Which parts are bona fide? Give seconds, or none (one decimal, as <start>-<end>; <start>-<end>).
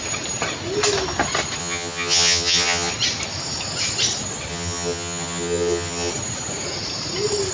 0.0-1.6; 2.9-4.5; 6.1-7.5